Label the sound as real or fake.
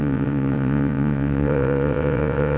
fake